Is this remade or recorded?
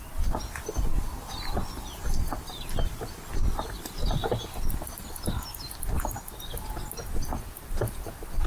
recorded